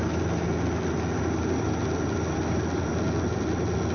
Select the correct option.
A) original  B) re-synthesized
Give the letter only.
A